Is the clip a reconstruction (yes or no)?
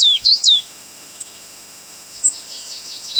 yes